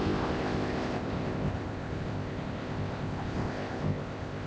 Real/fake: fake